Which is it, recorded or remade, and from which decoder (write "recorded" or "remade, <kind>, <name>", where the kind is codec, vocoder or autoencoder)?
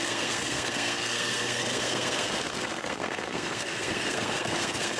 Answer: remade, codec, SNAC